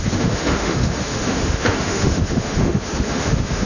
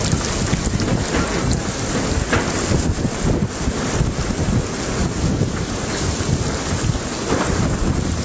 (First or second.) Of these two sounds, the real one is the second